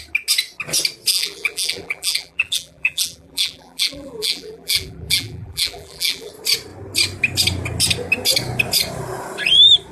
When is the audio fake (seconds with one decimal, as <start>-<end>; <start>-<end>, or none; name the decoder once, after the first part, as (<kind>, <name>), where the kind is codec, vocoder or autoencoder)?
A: 1.1-6.3 (vocoder, BigVGAN v2)